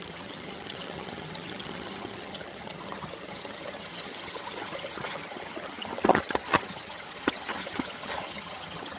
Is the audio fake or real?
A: fake